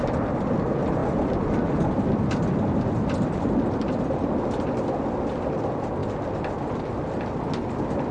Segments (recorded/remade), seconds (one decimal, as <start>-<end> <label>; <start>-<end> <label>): 0.0-8.1 recorded